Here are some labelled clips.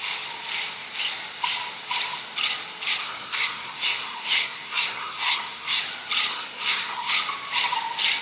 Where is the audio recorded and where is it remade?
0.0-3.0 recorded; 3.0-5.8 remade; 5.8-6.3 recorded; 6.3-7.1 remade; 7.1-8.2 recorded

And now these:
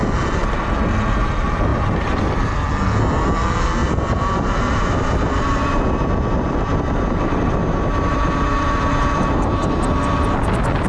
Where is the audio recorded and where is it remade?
0.0-3.8 recorded; 3.8-8.4 remade; 8.4-10.9 recorded